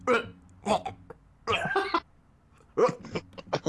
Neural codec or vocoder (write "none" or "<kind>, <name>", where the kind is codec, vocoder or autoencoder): none